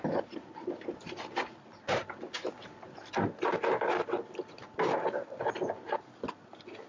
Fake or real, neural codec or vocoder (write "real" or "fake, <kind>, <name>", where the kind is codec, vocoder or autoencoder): real